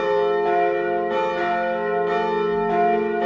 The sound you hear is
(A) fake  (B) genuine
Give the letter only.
B